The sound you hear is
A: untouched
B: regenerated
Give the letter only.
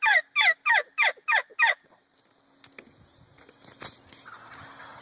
A